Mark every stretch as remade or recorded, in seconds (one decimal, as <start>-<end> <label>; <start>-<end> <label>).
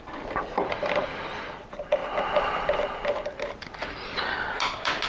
0.0-5.1 recorded